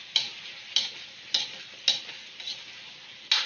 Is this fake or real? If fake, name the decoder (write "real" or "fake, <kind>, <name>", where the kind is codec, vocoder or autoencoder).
real